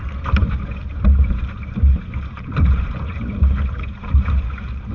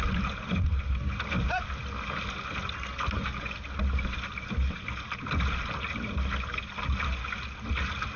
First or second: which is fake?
first